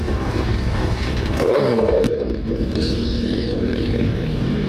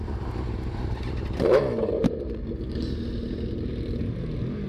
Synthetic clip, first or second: first